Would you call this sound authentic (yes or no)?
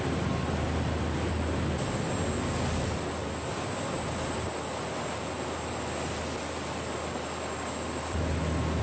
yes